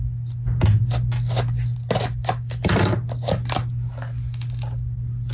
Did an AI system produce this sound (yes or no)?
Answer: no